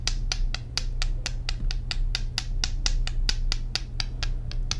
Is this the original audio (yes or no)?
yes